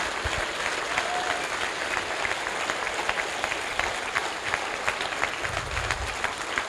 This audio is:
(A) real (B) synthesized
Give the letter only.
A